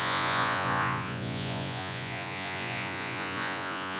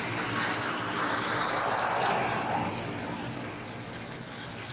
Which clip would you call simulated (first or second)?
first